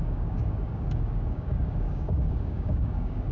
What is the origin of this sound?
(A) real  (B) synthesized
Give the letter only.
B